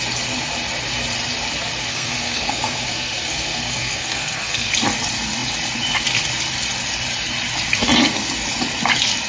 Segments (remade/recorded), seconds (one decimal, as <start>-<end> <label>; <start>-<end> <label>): 0.0-1.9 recorded; 1.9-4.7 remade; 4.7-9.3 recorded